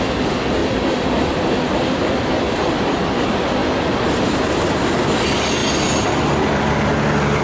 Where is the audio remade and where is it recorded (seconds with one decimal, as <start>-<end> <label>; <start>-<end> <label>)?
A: 0.0-0.6 recorded; 0.6-2.6 remade; 2.6-3.6 recorded; 3.6-4.9 remade; 4.9-7.4 recorded